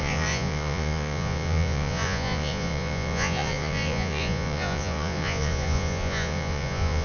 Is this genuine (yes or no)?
no